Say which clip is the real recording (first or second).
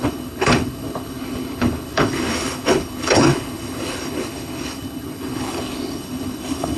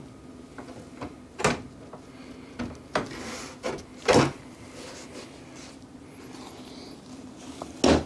second